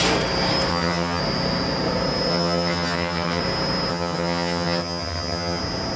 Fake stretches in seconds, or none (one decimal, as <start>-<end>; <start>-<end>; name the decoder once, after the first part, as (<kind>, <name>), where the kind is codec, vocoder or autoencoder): 0.7-1.2 (vocoder, HiFi-GAN); 2.3-3.4; 3.9-5.6